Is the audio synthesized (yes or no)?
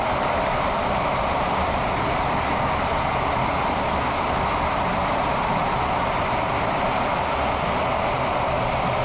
yes